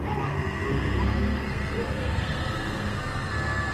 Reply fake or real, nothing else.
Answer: fake